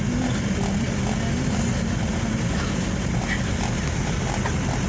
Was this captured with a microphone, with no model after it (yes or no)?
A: yes